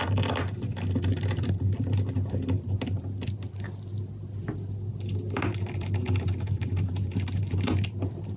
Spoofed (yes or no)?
no